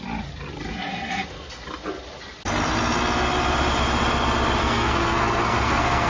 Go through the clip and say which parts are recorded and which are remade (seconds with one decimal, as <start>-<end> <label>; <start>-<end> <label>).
0.0-4.6 recorded; 4.6-6.1 remade